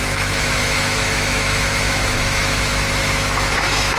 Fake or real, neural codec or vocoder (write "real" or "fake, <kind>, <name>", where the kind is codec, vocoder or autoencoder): fake, autoencoder, DAC-VAE